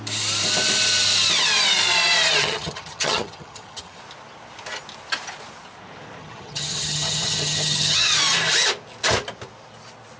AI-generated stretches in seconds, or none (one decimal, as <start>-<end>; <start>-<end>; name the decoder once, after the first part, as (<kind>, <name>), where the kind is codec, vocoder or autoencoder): 2.4-4.0 (vocoder, HiFi-GAN); 6.2-8.2